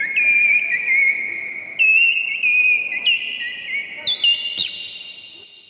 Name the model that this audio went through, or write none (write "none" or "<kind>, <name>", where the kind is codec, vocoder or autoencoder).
none